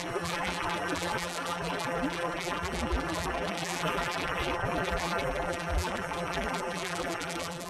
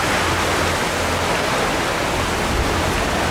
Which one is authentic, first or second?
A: second